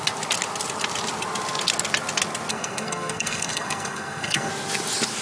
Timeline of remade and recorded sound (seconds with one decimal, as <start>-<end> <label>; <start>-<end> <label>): 0.0-2.5 recorded; 2.5-4.5 remade; 4.5-5.2 recorded